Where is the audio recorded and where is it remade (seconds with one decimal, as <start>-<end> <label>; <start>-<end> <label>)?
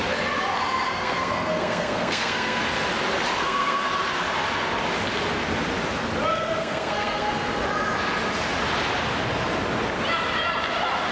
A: 0.0-0.9 recorded; 0.9-2.6 remade; 2.6-3.4 recorded; 3.4-3.9 remade; 3.9-6.3 recorded; 6.3-7.3 remade; 7.3-11.1 recorded